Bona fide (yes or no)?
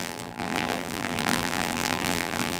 no